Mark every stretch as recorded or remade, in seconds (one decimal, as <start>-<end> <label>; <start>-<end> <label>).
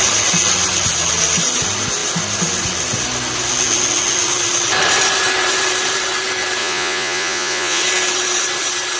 0.0-6.6 recorded; 6.6-7.8 remade; 7.8-9.0 recorded